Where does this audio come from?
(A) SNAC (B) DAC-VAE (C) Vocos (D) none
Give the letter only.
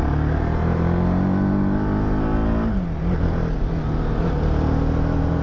D